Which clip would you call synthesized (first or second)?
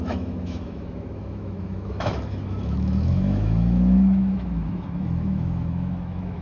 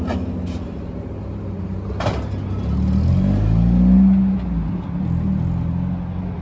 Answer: first